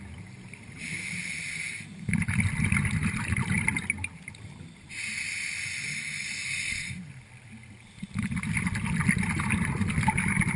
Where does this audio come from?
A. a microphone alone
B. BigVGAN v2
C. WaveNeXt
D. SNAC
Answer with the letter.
A